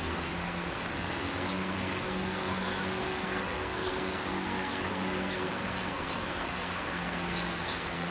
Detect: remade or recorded remade